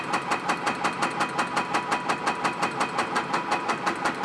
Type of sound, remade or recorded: recorded